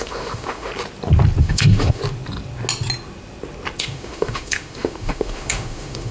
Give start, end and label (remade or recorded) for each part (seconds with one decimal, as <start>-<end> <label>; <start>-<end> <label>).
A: 0.0-0.7 remade; 0.7-1.4 recorded; 1.4-2.0 remade; 2.0-3.8 recorded; 3.8-6.1 remade